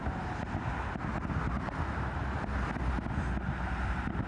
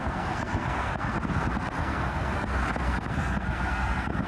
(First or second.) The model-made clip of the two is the second